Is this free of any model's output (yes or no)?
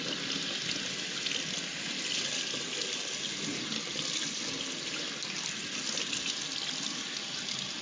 yes